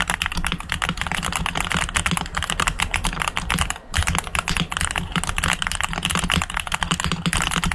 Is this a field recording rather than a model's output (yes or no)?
yes